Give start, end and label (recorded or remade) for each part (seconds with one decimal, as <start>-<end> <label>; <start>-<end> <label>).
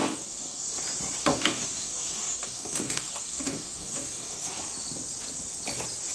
0.0-0.7 remade; 0.7-1.2 recorded; 1.2-4.6 remade; 4.6-6.1 recorded